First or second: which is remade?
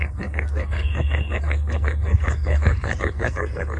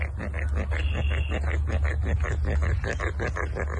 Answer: first